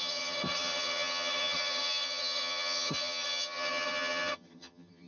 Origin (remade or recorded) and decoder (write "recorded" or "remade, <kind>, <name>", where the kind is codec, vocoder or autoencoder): remade, vocoder, HiFi-GAN